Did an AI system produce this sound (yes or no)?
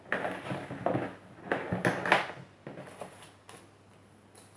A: no